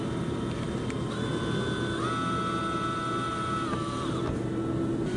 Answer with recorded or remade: recorded